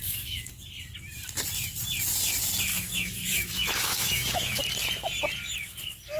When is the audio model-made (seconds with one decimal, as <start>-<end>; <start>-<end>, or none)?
0.0-0.5; 2.7-4.6